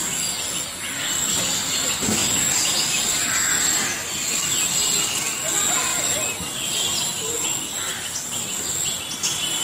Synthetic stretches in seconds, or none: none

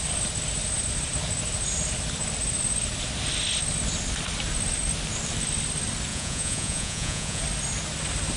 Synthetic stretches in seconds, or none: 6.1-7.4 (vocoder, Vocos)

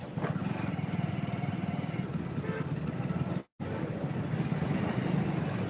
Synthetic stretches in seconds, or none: none